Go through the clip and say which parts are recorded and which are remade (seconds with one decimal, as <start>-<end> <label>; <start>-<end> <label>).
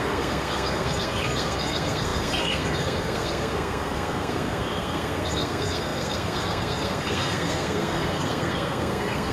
0.0-9.3 remade